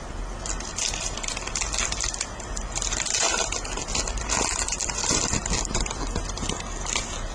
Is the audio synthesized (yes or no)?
no